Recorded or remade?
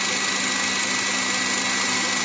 recorded